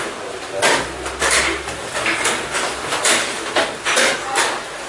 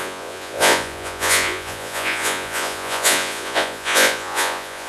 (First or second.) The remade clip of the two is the second